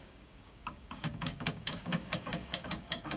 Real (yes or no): no